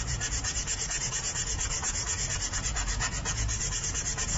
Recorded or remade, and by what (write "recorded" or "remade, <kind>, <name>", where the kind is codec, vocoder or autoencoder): remade, vocoder, Vocos